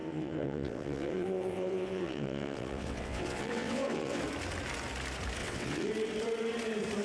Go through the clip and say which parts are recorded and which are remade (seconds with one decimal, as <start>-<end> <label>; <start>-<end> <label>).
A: 0.0-4.2 remade; 4.2-5.4 recorded; 5.4-5.9 remade; 5.9-7.0 recorded